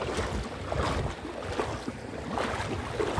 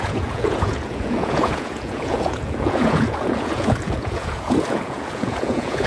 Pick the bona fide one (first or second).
first